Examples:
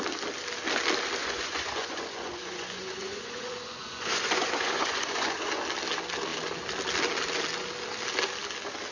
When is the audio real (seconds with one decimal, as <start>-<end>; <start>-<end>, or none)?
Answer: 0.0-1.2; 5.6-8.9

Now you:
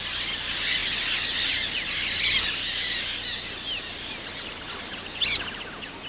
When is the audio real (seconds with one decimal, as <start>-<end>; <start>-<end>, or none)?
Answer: 0.0-6.1

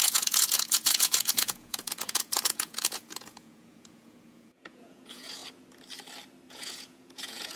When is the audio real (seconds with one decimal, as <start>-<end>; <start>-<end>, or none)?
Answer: 5.4-6.5